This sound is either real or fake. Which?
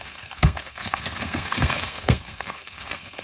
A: fake